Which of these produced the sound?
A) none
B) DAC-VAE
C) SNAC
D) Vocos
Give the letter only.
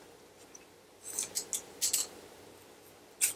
A